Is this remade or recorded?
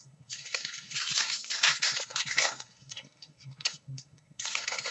remade